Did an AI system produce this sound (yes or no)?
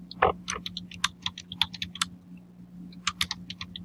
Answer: no